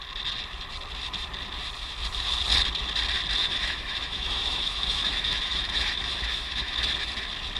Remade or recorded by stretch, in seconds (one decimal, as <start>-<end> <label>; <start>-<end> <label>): 0.0-3.4 recorded; 3.4-6.8 remade; 6.8-7.6 recorded